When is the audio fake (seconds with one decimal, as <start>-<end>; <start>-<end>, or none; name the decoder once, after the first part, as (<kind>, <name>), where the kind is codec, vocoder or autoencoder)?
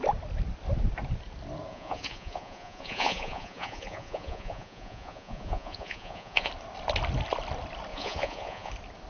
1.7-6.5 (vocoder, Vocos); 7.9-8.7